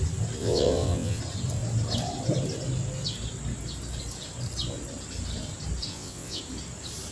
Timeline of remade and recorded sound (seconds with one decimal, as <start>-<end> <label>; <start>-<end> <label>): 0.0-0.4 recorded; 0.4-1.2 remade; 1.2-5.9 recorded; 5.9-6.4 remade; 6.4-7.1 recorded